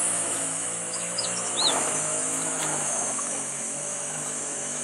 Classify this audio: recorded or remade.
remade